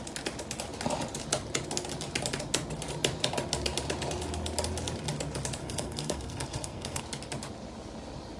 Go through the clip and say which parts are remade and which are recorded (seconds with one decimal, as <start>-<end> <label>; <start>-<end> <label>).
0.0-5.6 recorded; 5.6-7.0 remade; 7.0-8.4 recorded